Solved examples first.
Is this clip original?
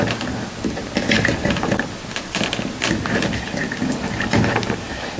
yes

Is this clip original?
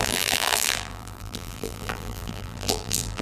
no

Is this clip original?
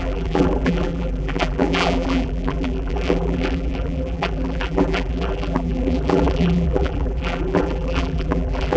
no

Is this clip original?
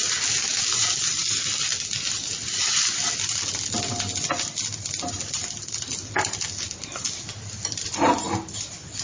yes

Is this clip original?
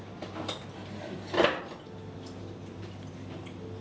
yes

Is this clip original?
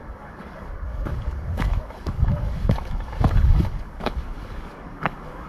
no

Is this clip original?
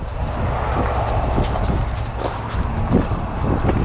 yes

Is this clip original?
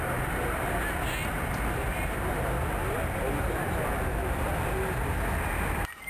yes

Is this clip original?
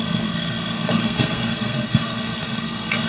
no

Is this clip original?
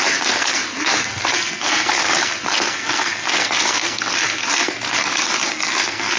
no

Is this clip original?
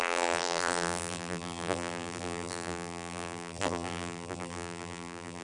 no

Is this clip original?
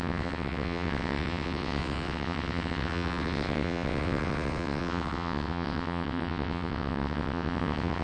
no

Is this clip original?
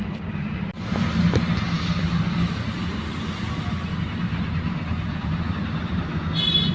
yes